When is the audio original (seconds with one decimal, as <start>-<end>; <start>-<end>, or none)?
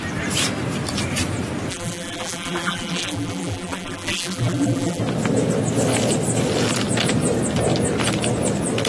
0.0-1.7; 5.0-8.9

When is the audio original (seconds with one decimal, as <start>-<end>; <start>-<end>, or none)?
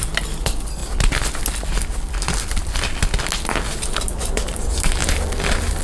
0.0-5.8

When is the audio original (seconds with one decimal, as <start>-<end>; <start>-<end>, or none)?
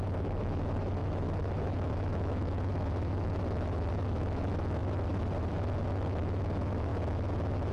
4.8-5.5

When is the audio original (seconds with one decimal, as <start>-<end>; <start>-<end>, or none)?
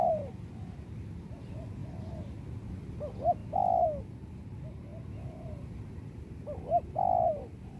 0.0-3.4; 4.0-7.8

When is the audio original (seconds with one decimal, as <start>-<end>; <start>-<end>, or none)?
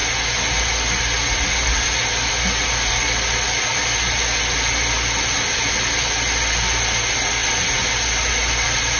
0.0-9.0